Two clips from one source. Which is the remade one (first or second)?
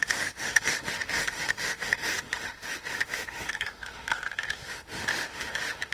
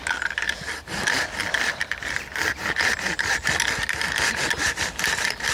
first